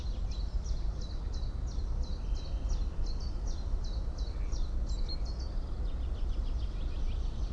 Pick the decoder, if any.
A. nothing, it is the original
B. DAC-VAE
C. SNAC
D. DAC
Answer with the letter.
A